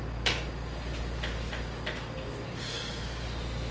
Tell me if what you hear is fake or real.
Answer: real